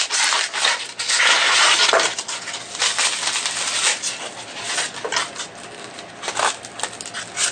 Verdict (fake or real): real